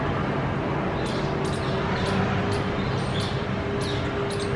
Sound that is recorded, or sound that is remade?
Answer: recorded